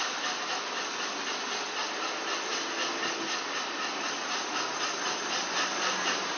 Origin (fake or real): real